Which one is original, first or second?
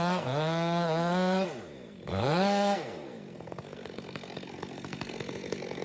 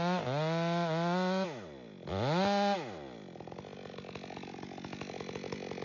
second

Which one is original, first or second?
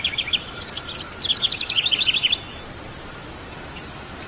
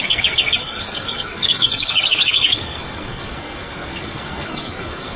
first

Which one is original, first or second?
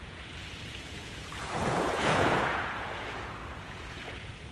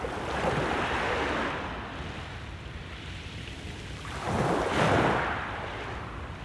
second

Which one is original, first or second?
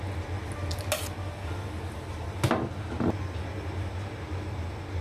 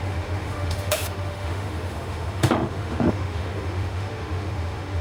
first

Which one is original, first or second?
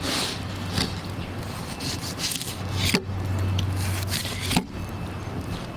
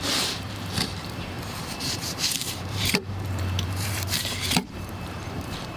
first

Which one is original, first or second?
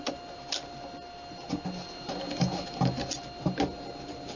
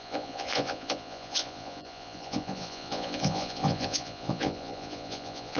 first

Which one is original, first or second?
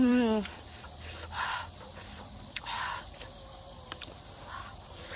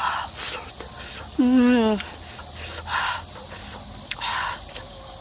second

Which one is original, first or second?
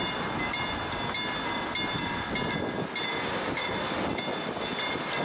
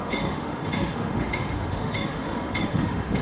first